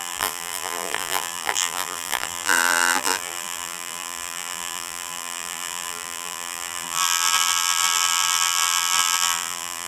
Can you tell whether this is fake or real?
fake